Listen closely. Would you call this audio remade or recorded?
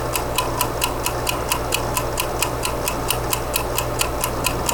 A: recorded